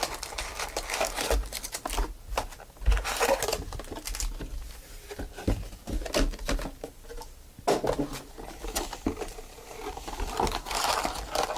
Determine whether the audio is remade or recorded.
recorded